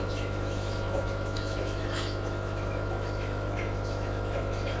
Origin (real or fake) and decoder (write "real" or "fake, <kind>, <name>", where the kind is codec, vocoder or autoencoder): fake, autoencoder, DAC-VAE